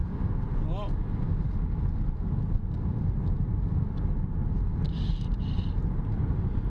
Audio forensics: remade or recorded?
recorded